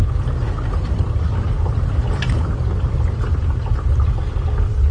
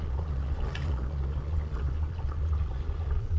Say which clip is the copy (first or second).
second